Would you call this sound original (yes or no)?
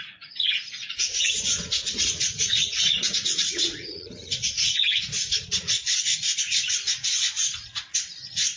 no